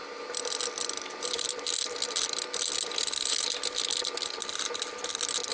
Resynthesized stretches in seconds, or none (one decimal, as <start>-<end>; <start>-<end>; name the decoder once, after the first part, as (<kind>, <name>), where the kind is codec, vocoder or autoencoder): none